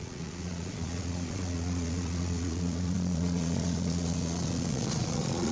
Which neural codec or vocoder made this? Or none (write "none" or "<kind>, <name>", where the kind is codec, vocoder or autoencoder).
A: vocoder, Vocos